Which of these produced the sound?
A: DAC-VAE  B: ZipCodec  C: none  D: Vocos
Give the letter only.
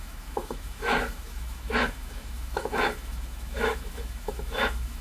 A